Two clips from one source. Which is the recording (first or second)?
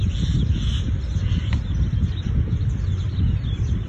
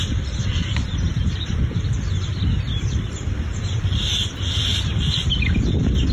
first